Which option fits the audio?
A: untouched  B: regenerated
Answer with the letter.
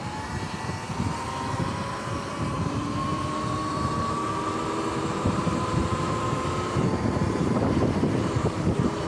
B